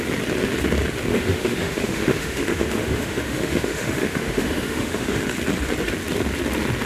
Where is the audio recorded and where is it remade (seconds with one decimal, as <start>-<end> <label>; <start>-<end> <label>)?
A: 0.0-1.1 recorded; 1.1-5.2 remade; 5.2-6.9 recorded